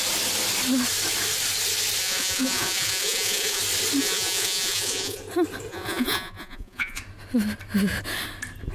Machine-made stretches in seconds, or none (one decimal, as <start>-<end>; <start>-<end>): 2.0-3.6; 4.0-5.2; 5.7-7.0

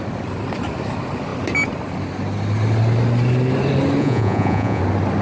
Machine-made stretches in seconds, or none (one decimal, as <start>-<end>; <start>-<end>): 4.0-4.8

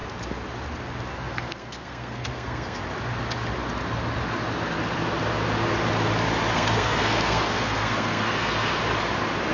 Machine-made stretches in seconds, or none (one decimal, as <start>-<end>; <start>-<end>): 1.1-2.8; 6.5-8.7